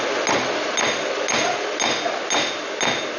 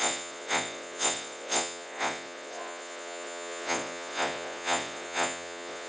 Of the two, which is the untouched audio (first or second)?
first